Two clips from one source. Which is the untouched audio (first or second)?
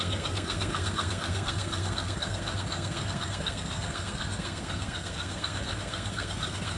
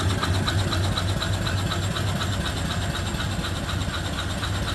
second